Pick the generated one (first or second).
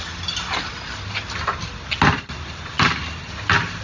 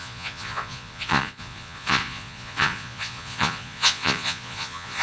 second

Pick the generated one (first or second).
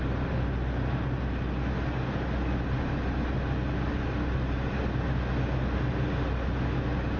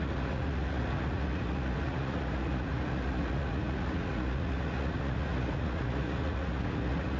second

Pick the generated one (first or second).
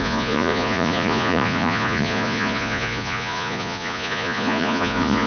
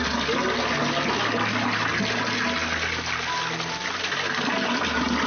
first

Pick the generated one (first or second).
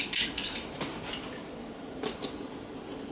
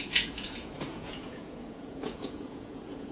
second